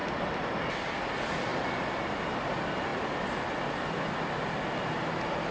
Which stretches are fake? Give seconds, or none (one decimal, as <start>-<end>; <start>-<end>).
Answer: 0.0-0.9; 1.5-2.1; 2.9-4.3